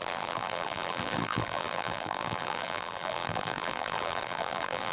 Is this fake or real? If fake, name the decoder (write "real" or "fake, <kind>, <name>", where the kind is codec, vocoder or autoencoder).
fake, vocoder, BigVGAN v2